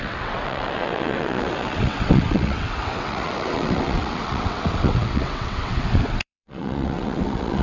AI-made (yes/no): yes